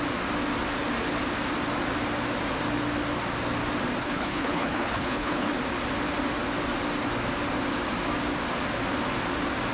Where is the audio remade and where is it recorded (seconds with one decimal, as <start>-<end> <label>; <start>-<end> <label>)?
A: 0.0-4.0 recorded; 4.0-5.5 remade; 5.5-9.7 recorded